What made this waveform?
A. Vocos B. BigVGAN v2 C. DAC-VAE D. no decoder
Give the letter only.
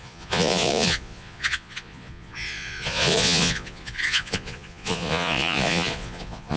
A